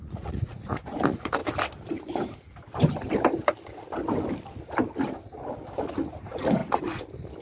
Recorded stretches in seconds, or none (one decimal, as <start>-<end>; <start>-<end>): 1.4-5.8; 6.6-7.4